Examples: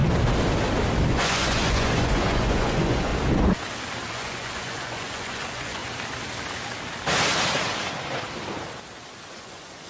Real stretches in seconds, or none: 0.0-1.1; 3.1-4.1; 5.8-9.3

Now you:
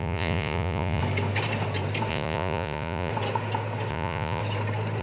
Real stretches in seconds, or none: 1.0-2.1; 3.1-3.9; 4.4-5.0

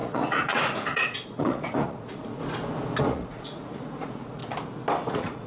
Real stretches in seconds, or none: 2.4-3.0; 4.4-5.1

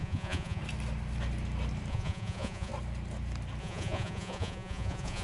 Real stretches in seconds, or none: 0.6-1.9; 2.7-3.6

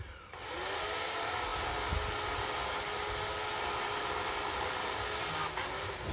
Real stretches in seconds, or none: 0.0-6.1

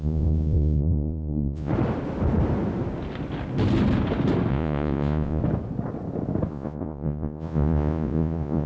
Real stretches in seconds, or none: 1.7-4.5; 5.4-6.5

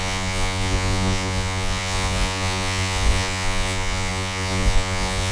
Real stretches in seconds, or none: none

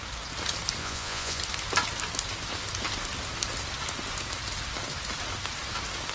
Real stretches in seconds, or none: 0.0-0.8; 1.4-6.1